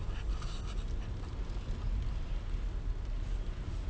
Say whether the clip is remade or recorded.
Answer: recorded